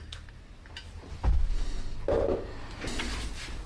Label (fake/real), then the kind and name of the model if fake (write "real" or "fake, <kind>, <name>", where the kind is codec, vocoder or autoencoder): real